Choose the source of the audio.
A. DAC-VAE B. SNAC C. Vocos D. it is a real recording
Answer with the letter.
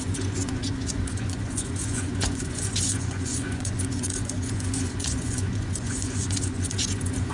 C